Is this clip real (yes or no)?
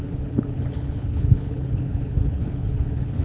no